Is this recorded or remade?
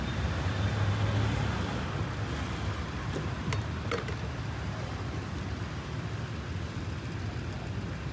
recorded